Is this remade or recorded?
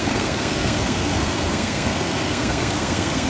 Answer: remade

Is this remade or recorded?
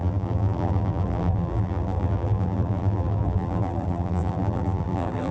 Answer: remade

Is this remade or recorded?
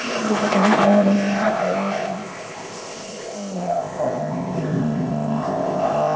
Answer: remade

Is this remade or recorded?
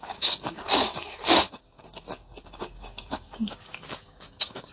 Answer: remade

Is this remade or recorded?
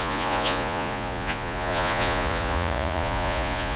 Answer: remade